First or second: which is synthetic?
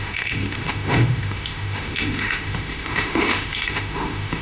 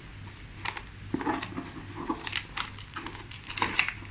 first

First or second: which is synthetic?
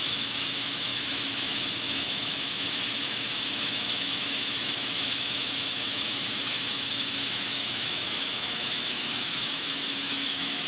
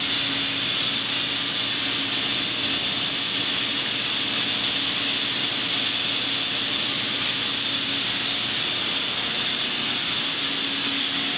first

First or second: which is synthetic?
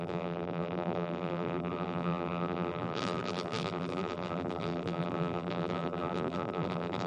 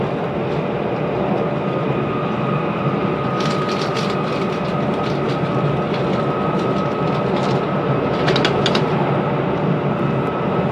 first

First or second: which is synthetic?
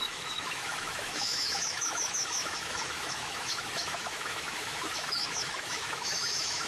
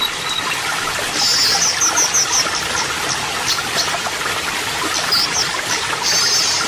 first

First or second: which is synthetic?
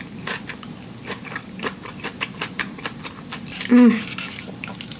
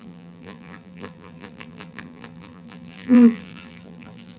second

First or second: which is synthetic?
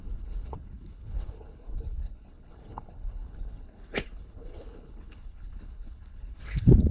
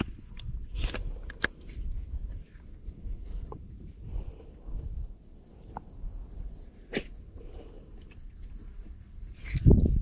first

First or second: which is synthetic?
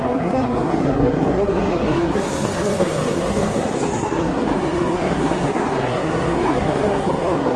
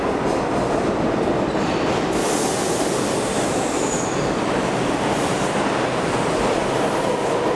first